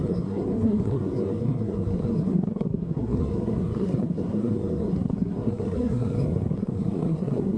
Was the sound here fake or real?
fake